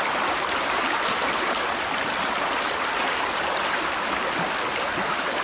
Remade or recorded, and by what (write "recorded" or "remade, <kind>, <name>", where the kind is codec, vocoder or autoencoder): recorded